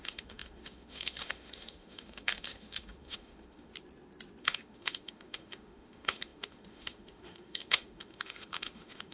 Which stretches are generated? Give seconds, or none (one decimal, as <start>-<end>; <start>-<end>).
0.0-3.7; 4.4-9.1